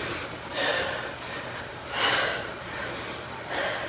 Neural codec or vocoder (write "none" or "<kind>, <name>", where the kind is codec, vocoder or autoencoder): vocoder, BigVGAN v2